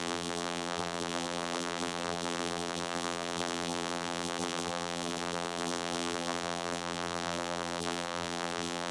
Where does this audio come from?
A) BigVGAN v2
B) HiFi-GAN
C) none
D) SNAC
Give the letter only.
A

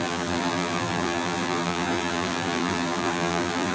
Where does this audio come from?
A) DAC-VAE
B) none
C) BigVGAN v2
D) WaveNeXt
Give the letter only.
C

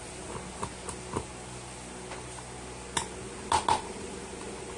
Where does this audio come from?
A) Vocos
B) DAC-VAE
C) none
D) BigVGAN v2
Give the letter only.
C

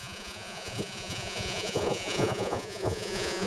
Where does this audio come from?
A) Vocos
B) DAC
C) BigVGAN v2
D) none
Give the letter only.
A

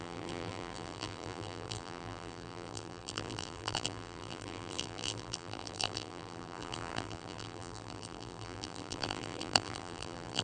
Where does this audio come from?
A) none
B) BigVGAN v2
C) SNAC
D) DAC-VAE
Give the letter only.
B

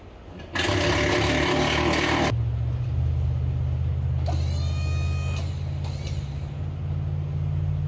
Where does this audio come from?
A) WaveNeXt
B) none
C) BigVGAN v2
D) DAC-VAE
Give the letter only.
B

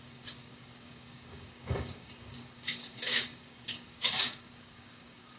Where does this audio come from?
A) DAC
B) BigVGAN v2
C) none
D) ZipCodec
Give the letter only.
A